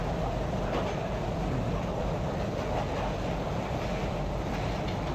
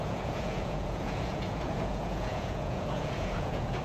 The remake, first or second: second